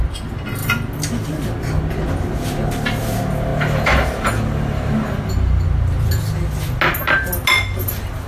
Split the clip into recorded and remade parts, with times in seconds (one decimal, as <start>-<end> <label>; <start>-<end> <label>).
0.0-8.3 recorded